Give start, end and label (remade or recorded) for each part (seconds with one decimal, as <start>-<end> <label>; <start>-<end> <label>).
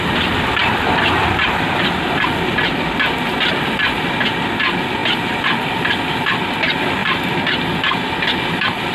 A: 0.0-8.9 recorded